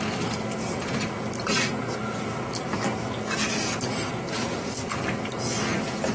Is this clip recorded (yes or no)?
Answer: yes